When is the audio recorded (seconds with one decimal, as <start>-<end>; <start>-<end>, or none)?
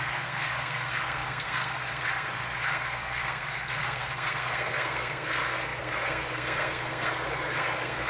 none